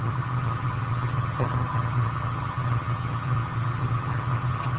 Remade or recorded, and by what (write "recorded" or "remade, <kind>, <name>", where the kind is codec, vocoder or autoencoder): remade, vocoder, HiFi-GAN